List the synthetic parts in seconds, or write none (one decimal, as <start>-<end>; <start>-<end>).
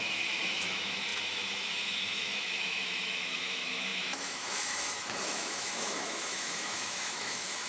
0.0-7.7